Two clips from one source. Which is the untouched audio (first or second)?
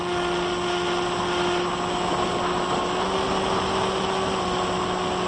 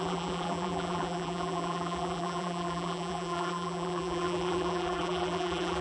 first